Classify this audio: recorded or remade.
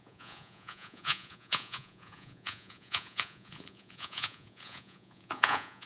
remade